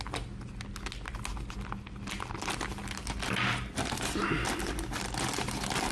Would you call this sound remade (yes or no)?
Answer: no